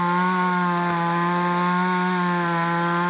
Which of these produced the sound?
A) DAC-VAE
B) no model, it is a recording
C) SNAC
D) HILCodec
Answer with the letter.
B